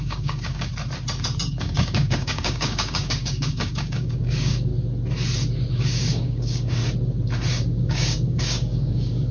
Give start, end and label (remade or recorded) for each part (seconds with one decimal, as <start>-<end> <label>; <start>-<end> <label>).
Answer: 0.0-0.7 remade; 0.7-1.5 recorded; 1.5-4.7 remade; 4.7-5.7 recorded; 5.7-6.8 remade; 6.8-7.5 recorded; 7.5-9.3 remade